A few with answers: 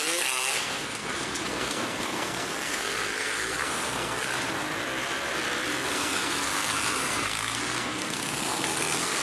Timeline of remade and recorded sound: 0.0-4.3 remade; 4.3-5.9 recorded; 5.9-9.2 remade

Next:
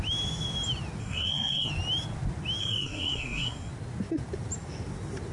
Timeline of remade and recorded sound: 0.0-1.0 recorded; 1.0-1.7 remade; 1.7-2.6 recorded; 2.6-3.7 remade; 3.7-5.3 recorded

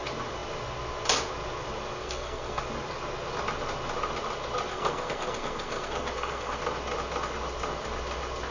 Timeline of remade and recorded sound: 0.0-2.0 recorded; 2.0-2.6 remade; 2.6-4.7 recorded; 4.7-6.6 remade; 6.6-8.5 recorded

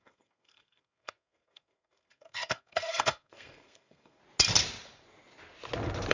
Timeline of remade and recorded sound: 0.0-4.2 remade; 4.2-6.1 recorded

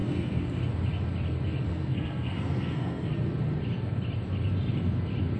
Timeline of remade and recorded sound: 0.0-0.6 remade; 0.6-1.7 recorded; 1.7-3.1 remade; 3.1-5.4 recorded